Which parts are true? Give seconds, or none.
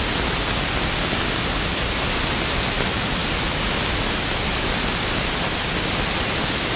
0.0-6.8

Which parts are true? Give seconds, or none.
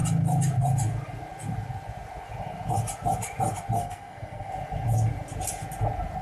0.0-3.8; 4.5-6.2